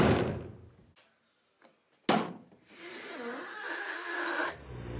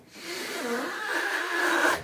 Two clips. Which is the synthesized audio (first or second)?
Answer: second